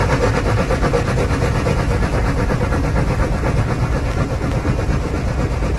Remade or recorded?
recorded